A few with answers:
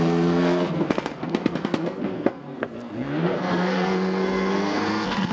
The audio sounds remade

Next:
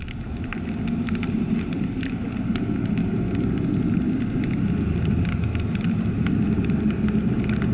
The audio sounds recorded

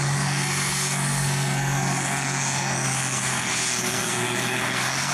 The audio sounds remade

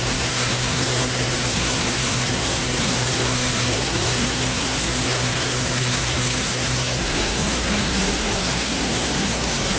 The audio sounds remade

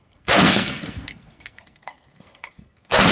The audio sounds remade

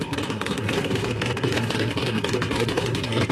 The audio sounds remade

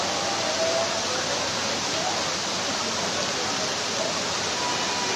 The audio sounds recorded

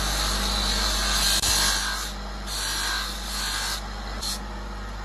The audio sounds recorded